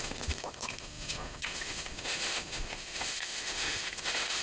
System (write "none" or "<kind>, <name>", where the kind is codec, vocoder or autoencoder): autoencoder, DAC-VAE